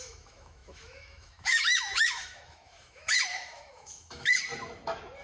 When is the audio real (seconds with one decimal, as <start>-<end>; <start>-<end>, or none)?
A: 4.4-5.2